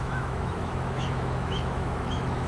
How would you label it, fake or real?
fake